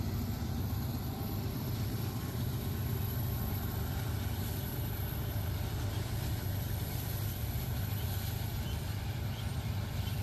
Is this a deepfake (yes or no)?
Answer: yes